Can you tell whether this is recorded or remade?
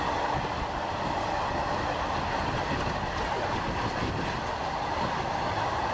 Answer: recorded